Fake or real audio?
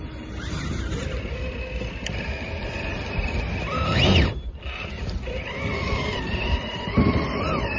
real